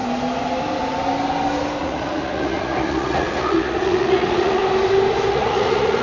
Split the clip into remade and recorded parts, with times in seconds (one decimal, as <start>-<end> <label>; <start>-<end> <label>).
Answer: 0.0-1.8 recorded; 1.8-4.6 remade; 4.6-5.3 recorded; 5.3-6.0 remade